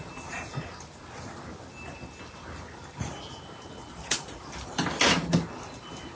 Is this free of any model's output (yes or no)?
yes